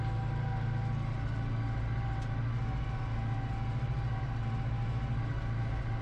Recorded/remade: recorded